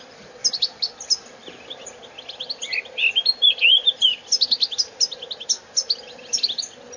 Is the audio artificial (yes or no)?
no